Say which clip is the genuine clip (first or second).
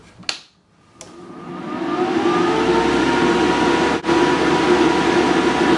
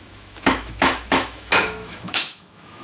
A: first